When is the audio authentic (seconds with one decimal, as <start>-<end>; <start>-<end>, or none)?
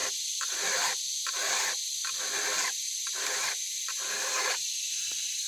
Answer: 0.0-5.5